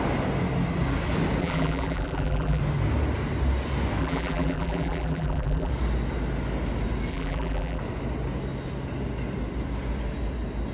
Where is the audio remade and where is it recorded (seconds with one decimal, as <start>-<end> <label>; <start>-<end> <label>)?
0.0-1.4 recorded; 1.4-2.6 remade; 2.6-4.0 recorded; 4.0-5.7 remade; 5.7-7.1 recorded; 7.1-7.8 remade; 7.8-10.7 recorded